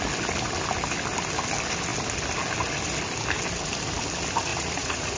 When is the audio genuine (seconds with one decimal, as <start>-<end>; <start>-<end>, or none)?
0.0-4.5